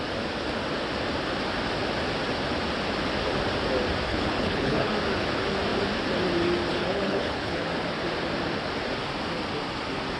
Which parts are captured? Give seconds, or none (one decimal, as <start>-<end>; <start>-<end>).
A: 0.0-4.1; 4.9-6.7; 7.7-10.2